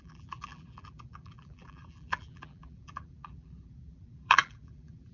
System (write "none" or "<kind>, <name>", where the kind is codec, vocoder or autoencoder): vocoder, BigVGAN v2